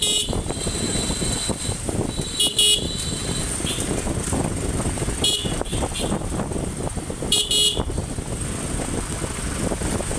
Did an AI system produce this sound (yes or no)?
no